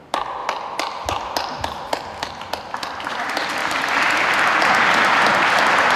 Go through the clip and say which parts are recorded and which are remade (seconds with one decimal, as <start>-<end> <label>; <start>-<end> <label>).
0.0-6.0 recorded